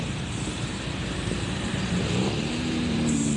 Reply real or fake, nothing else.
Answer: fake